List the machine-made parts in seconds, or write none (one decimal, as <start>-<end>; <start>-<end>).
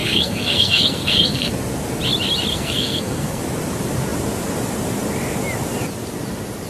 0.0-1.5; 2.5-3.4